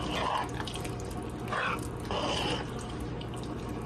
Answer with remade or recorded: recorded